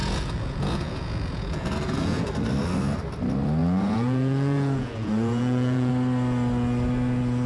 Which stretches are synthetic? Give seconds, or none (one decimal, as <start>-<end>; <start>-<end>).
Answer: 0.0-2.3; 3.6-5.9